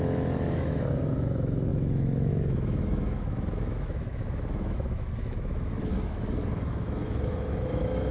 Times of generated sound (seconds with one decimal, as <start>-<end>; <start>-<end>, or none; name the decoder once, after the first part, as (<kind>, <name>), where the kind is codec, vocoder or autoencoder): 0.0-8.1 (autoencoder, DAC-VAE)